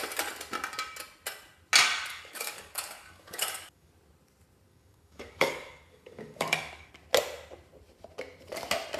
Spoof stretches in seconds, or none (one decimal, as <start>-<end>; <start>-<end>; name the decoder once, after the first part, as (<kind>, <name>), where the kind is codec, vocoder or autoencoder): 2.1-3.9 (codec, DAC); 4.7-6.9